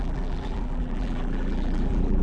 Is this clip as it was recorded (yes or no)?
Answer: no